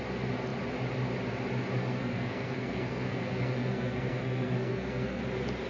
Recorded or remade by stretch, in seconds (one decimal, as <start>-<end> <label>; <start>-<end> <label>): 0.0-1.8 recorded; 1.8-5.2 remade; 5.2-5.7 recorded